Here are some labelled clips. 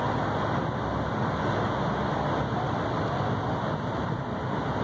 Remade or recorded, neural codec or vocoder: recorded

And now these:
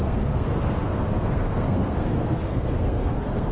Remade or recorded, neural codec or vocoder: remade, codec, SNAC